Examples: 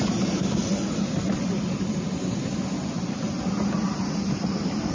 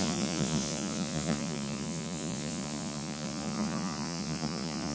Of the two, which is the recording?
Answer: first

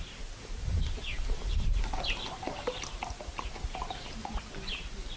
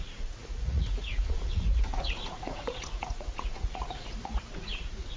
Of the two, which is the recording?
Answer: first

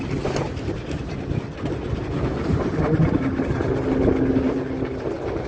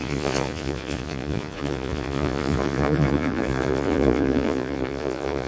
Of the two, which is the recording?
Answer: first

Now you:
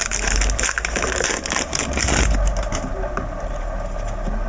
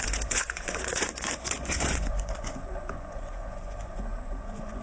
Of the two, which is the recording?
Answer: first